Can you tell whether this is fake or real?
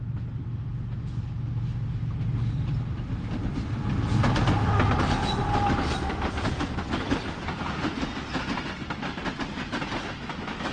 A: real